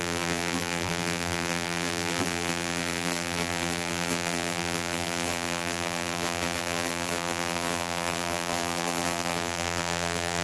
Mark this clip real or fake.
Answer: fake